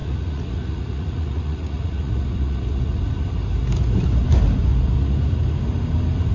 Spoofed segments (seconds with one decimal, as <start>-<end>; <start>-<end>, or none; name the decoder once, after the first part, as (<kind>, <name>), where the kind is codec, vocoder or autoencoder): 0.0-3.0 (vocoder, Vocos)